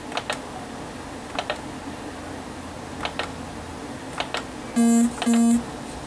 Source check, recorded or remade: recorded